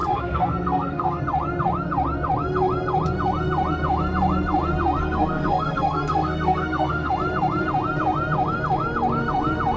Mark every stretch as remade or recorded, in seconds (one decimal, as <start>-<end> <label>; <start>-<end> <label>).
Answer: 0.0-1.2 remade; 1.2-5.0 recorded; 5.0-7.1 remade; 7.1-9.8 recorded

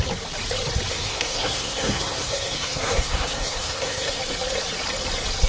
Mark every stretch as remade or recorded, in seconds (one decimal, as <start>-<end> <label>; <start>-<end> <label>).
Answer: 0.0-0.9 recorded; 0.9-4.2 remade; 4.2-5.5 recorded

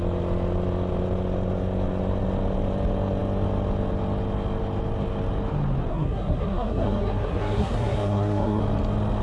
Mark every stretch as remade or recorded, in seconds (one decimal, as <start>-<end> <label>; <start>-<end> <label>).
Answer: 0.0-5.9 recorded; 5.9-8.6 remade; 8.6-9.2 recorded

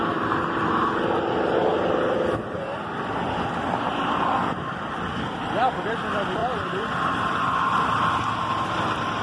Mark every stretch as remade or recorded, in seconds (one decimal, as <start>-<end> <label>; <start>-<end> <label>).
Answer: 0.0-9.2 recorded